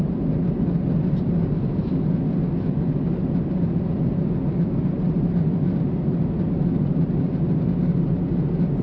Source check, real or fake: real